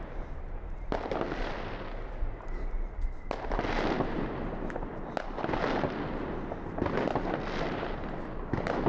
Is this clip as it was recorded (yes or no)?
yes